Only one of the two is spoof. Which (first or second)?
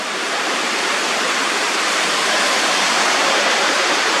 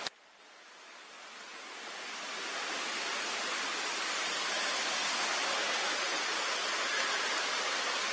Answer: first